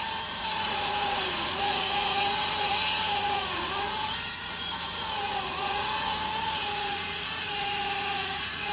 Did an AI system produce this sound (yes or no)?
yes